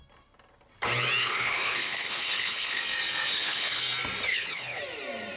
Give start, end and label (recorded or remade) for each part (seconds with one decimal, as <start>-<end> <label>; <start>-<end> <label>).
0.0-1.2 recorded; 1.2-2.8 remade; 2.8-3.3 recorded; 3.3-3.8 remade; 3.8-4.3 recorded; 4.3-4.8 remade; 4.8-5.4 recorded